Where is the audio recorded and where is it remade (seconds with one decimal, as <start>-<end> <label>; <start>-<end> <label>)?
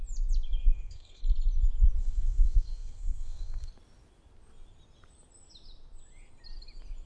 0.0-0.6 recorded; 0.6-1.2 remade; 1.2-2.0 recorded; 2.0-3.7 remade; 3.7-7.1 recorded